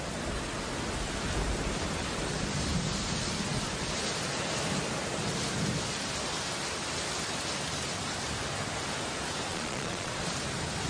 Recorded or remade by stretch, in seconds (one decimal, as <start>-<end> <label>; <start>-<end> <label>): 0.0-9.5 recorded; 9.5-10.1 remade; 10.1-10.9 recorded